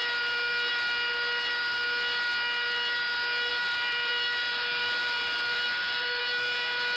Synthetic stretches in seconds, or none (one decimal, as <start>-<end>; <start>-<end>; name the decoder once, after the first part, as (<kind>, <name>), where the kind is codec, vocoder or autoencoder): 3.5-4.1 (vocoder, BigVGAN v2); 4.5-6.2